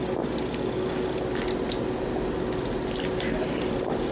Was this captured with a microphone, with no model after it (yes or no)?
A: yes